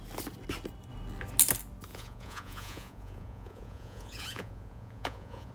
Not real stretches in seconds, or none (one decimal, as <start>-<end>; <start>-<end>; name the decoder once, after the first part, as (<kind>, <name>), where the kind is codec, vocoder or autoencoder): 1.9-5.5 (vocoder, Vocos)